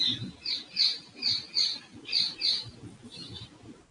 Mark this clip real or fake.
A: real